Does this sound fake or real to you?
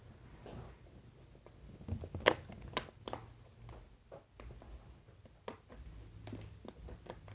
real